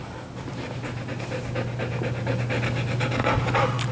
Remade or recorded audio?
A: recorded